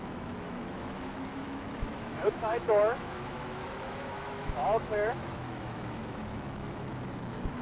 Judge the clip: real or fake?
fake